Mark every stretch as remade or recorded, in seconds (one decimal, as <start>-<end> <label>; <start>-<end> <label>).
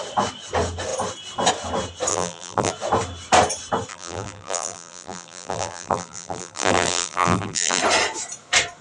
0.0-2.1 recorded; 2.1-2.7 remade; 2.7-3.9 recorded; 3.9-7.8 remade; 7.8-8.8 recorded